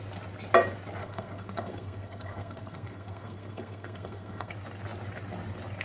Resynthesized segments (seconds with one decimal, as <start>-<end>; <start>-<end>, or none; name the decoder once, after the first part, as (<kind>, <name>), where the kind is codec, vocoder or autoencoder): 1.0-4.5 (codec, SNAC)